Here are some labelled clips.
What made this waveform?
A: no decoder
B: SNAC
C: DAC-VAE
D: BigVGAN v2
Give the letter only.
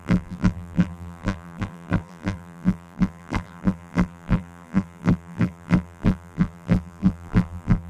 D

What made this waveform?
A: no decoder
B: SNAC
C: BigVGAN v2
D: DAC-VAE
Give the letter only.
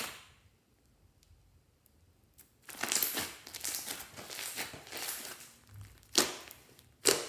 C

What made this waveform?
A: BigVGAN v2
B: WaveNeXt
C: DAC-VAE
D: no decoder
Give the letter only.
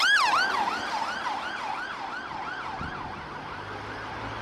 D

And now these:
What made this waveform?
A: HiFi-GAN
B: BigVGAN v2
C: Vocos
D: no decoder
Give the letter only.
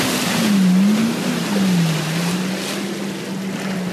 D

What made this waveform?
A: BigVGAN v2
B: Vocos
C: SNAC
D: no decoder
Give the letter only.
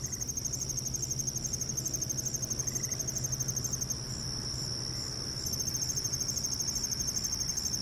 D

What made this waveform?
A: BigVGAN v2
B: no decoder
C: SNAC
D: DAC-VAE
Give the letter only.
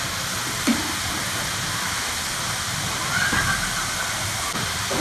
B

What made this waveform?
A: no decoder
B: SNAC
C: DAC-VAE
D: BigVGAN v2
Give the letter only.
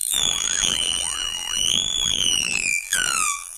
D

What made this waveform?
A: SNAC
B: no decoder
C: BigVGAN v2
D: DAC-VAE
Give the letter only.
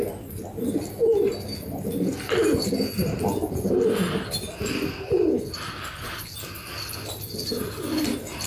B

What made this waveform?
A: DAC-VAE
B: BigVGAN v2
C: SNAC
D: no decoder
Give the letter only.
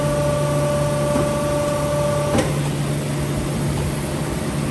D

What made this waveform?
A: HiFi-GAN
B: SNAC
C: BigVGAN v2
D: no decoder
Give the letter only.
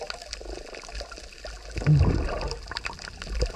D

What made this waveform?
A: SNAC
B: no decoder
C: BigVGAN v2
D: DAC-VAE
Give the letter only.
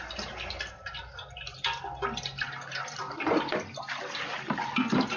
C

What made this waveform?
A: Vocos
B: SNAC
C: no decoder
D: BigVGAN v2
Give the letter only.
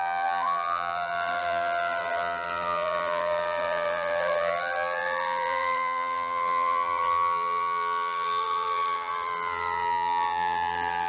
D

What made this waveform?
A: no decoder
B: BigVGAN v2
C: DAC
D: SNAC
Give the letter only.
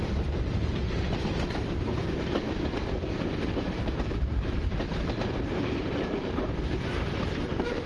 B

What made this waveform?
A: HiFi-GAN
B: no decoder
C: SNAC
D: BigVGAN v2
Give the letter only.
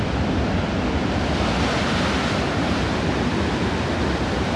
D